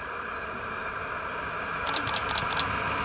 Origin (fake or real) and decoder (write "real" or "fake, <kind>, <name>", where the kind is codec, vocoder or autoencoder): real